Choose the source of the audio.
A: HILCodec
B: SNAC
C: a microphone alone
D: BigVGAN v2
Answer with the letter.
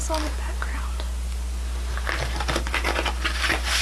C